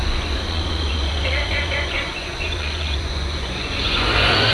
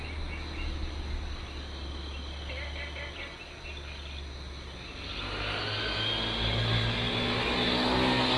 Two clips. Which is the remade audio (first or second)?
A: first